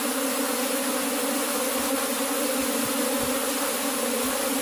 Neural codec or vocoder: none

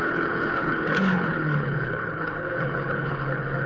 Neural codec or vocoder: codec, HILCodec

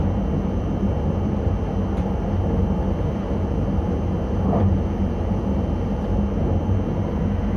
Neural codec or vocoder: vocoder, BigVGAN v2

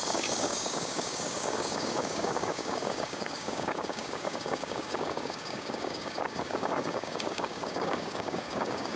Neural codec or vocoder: codec, DAC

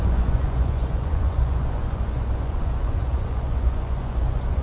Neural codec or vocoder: vocoder, Vocos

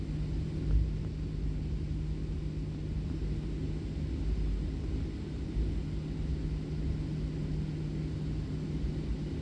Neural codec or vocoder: none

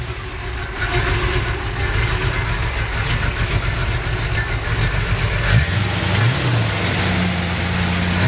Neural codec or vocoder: none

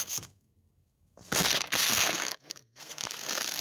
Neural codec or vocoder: codec, SNAC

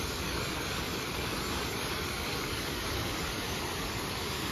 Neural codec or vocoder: codec, DAC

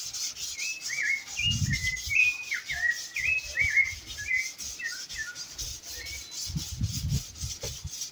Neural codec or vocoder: none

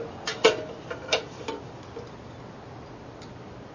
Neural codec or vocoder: none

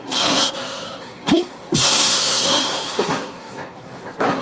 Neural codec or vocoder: codec, SNAC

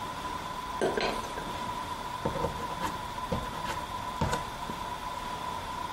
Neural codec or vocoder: none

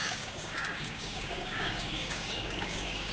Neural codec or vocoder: codec, DAC